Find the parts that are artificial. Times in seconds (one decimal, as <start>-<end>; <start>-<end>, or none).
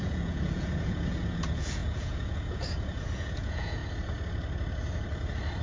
0.0-3.8